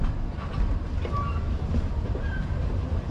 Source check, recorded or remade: recorded